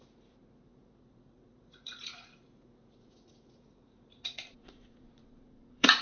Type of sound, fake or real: fake